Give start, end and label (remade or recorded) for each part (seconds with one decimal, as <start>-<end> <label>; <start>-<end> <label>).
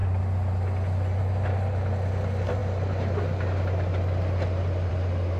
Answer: 0.0-5.4 recorded